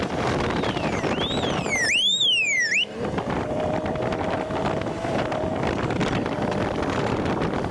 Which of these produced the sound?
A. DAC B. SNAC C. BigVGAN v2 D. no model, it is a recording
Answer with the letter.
C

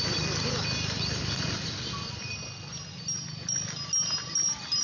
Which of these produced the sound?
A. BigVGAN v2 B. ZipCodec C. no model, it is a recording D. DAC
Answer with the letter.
C